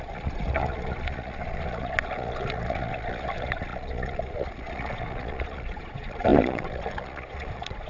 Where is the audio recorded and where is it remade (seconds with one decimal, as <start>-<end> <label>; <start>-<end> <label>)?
0.0-7.9 remade